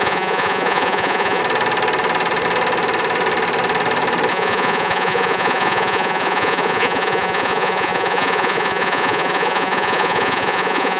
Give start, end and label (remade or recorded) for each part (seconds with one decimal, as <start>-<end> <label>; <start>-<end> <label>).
0.0-1.4 remade; 1.4-4.3 recorded; 4.3-11.0 remade